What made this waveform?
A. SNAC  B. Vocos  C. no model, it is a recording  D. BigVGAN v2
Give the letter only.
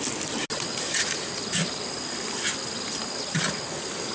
C